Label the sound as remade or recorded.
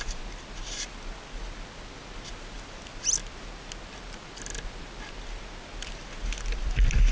recorded